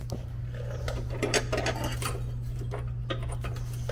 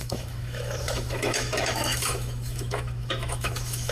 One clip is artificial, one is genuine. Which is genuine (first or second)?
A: first